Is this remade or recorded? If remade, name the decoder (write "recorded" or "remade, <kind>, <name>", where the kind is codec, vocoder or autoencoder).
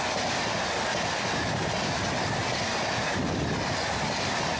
recorded